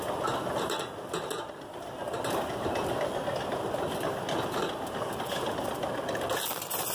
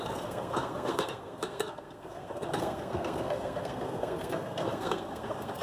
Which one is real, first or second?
first